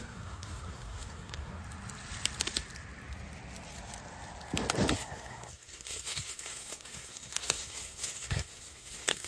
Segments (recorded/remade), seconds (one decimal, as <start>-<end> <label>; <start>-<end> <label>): 0.0-1.6 remade; 1.6-4.9 recorded; 4.9-9.3 remade

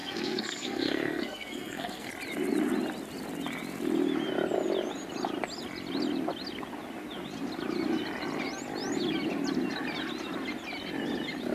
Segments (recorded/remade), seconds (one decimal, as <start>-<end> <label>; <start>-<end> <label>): 0.0-2.1 remade; 2.1-11.5 recorded

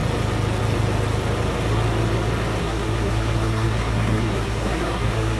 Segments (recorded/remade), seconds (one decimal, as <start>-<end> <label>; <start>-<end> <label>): 0.0-2.6 recorded; 2.6-5.4 remade

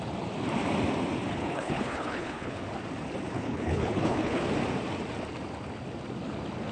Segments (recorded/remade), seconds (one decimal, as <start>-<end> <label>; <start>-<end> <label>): 0.0-1.3 recorded; 1.3-2.6 remade; 2.6-3.3 recorded; 3.3-4.4 remade; 4.4-6.7 recorded

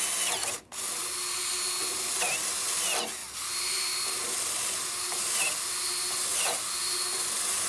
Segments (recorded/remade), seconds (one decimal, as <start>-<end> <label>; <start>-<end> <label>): 0.0-7.7 recorded

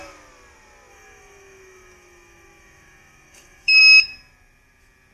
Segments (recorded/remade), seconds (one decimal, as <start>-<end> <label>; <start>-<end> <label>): 0.0-0.9 recorded; 0.9-3.8 remade; 3.8-5.1 recorded

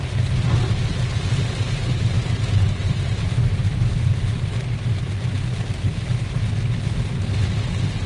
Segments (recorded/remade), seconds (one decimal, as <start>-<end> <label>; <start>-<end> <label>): 0.0-2.8 recorded; 2.8-4.5 remade; 4.5-8.1 recorded

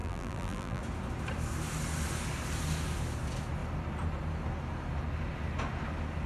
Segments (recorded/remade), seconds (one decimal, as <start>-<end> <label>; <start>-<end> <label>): 0.0-0.8 remade; 0.8-6.3 recorded